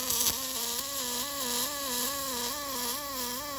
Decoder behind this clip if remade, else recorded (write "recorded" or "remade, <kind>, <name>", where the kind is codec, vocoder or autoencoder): recorded